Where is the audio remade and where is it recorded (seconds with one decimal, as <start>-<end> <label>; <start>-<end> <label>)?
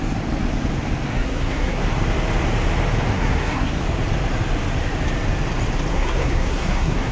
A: 0.0-1.1 recorded; 1.1-1.8 remade; 1.8-3.1 recorded; 3.1-3.8 remade; 3.8-5.9 recorded; 5.9-7.1 remade